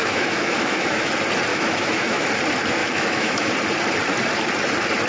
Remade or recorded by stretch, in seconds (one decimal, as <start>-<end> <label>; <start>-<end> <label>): 0.0-1.1 remade; 1.1-1.5 recorded; 1.5-2.3 remade; 2.3-2.8 recorded; 2.8-3.5 remade; 3.5-5.1 recorded